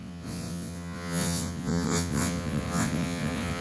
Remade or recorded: remade